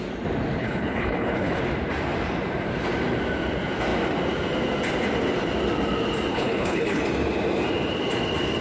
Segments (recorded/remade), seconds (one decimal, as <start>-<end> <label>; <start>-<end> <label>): 0.0-0.6 recorded; 0.6-1.6 remade; 1.6-6.3 recorded; 6.3-7.0 remade; 7.0-8.6 recorded